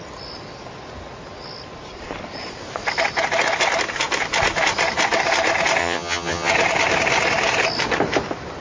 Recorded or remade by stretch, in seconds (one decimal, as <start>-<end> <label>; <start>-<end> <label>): 0.0-5.8 recorded; 5.8-6.5 remade; 6.5-8.6 recorded